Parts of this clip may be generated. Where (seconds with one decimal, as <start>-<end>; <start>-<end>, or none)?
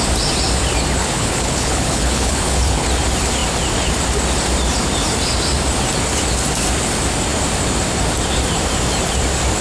1.0-2.9